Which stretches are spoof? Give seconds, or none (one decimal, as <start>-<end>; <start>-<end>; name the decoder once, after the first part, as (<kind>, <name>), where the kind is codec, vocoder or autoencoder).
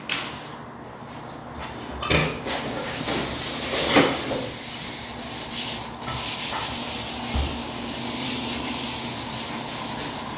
2.2-3.0 (codec, DAC)